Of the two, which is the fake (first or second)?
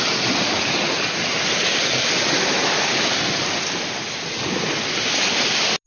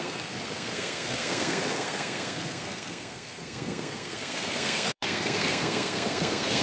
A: second